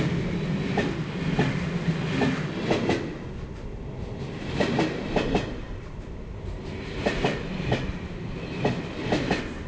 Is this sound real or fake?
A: real